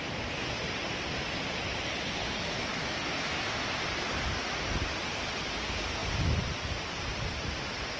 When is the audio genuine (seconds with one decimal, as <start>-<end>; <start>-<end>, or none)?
0.0-2.7; 3.6-8.0